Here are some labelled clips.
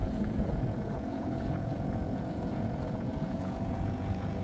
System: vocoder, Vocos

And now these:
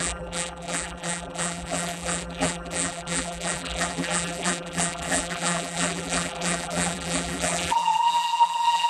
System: vocoder, BigVGAN v2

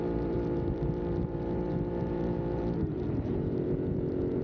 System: vocoder, BigVGAN v2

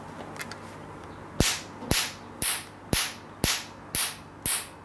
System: none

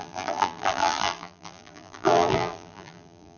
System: vocoder, BigVGAN v2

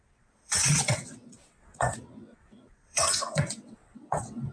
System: vocoder, WaveNeXt